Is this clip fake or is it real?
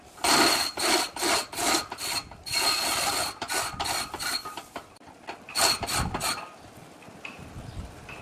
real